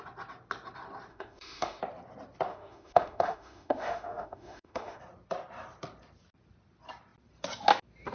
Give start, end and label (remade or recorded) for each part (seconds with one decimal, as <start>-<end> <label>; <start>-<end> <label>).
0.0-1.1 recorded; 1.1-1.8 remade; 1.8-2.5 recorded; 2.5-5.0 remade; 5.0-8.1 recorded